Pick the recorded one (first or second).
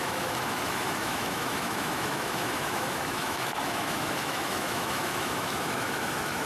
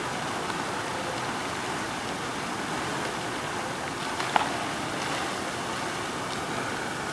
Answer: second